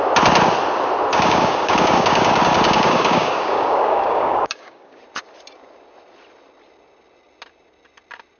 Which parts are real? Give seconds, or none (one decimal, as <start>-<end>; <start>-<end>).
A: 0.0-1.1; 5.0-8.4